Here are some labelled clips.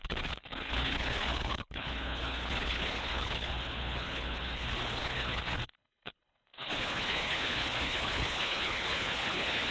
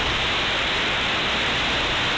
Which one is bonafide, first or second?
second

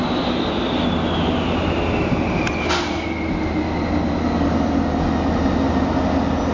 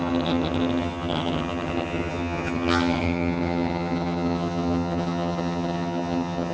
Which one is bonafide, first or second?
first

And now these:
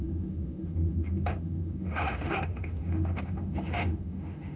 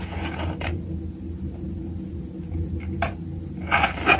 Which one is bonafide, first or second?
second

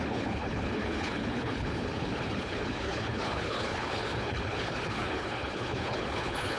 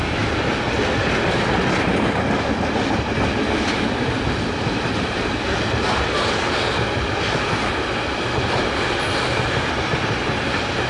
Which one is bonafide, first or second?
second